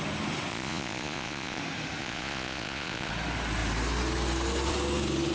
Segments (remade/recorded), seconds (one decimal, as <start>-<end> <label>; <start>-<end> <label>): 0.0-0.5 recorded; 0.5-1.6 remade; 1.6-2.0 recorded; 2.0-3.1 remade; 3.1-5.3 recorded